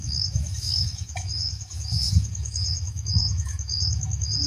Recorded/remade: remade